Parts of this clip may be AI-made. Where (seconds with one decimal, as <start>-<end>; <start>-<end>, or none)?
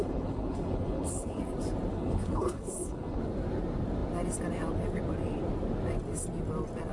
0.0-1.4; 1.9-3.2